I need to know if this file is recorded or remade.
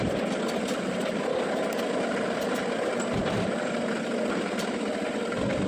recorded